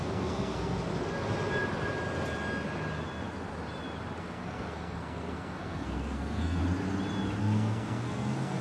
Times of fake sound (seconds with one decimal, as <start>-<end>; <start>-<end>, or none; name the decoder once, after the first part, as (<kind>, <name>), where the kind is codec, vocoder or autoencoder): 0.0-0.9 (codec, SNAC); 4.2-6.6; 7.4-8.6